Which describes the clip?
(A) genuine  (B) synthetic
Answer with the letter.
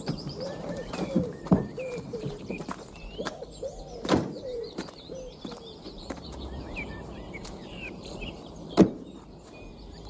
B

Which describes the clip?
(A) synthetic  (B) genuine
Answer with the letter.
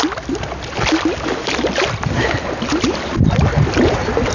B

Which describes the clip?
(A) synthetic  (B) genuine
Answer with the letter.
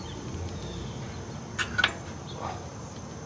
B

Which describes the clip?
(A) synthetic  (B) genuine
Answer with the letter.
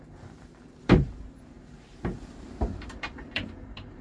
A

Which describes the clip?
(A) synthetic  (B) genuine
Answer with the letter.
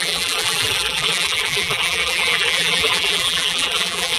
A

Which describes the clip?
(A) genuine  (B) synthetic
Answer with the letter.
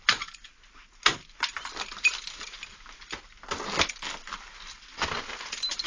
A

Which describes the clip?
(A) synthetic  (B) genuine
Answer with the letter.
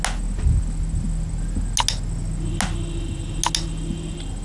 B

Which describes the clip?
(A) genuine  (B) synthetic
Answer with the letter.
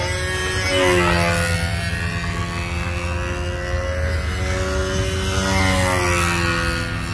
A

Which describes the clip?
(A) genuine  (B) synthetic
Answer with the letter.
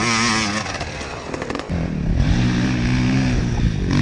A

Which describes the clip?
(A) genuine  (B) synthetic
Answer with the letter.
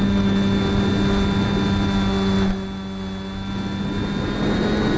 A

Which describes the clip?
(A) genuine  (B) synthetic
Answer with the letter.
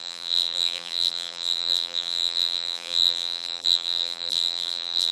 B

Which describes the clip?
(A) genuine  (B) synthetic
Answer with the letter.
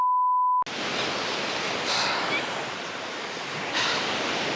A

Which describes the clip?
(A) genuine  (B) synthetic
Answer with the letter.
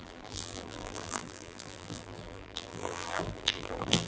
B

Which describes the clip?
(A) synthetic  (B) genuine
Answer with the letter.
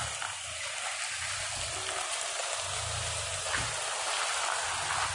B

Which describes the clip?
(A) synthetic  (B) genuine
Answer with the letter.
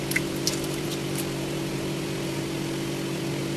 B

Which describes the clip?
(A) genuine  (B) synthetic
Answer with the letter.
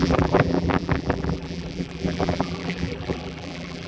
B